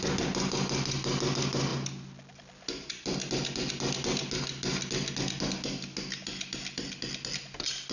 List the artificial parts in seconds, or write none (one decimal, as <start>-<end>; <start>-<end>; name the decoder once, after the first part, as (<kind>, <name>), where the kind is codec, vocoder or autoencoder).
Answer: none